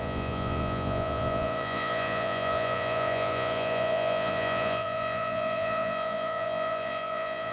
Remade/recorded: remade